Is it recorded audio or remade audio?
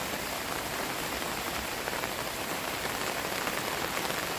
remade